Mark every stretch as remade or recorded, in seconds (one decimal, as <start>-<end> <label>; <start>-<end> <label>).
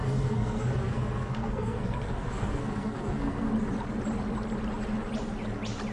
0.0-3.5 remade; 3.5-5.9 recorded